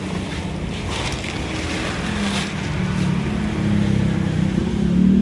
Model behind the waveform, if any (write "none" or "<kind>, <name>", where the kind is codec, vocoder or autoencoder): none